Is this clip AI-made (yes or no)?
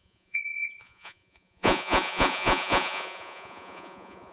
yes